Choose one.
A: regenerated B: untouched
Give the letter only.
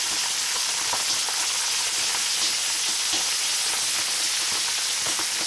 B